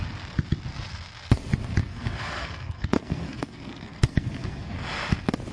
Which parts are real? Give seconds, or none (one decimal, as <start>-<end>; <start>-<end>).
0.0-1.8; 4.7-5.5